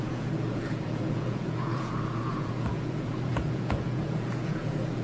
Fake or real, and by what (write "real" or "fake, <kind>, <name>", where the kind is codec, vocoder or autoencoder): fake, vocoder, Vocos